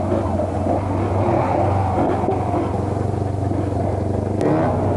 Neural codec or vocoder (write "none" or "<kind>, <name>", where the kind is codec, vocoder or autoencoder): none